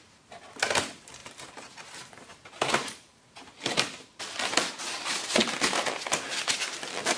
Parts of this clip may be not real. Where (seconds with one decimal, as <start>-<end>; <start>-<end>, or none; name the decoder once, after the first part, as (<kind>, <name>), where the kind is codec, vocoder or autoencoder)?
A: 1.2-4.2 (vocoder, BigVGAN v2)

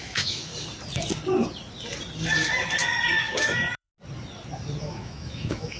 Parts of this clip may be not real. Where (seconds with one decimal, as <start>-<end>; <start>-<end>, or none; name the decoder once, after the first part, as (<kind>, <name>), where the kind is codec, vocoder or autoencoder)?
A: 0.0-0.5 (autoencoder, DAC-VAE); 3.3-3.9; 4.8-5.8

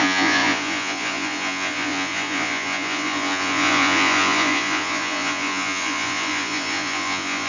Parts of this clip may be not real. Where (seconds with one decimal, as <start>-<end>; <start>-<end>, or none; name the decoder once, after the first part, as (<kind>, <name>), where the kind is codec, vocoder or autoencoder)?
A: 0.0-7.5 (vocoder, Vocos)

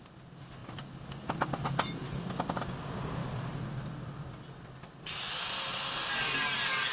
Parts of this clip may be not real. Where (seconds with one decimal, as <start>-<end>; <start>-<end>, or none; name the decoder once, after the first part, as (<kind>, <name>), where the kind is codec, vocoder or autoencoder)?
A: none

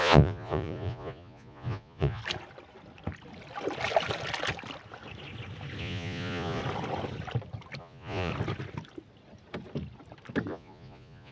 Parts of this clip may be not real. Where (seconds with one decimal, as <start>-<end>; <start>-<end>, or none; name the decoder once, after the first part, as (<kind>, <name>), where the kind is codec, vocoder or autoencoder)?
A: 0.0-2.2 (vocoder, Vocos); 5.8-6.6; 7.8-8.3; 10.5-11.3

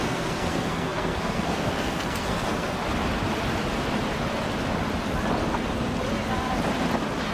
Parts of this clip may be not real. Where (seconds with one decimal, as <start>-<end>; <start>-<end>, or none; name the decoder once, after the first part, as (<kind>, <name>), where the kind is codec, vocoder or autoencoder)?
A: 0.0-2.8 (codec, SNAC)